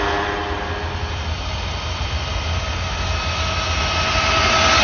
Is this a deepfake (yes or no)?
no